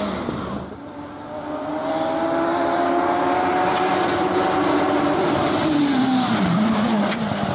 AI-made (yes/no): no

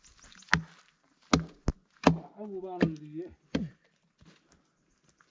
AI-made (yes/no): no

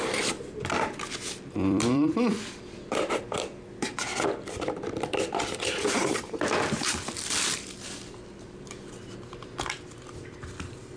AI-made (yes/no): yes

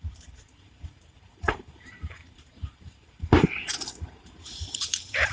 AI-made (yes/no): yes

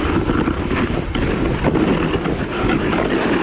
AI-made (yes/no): no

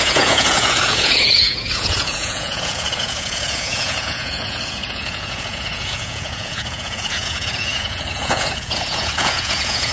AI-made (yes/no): yes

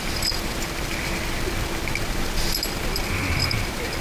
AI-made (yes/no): no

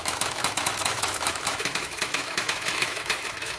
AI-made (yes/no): yes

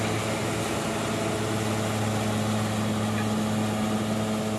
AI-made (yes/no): no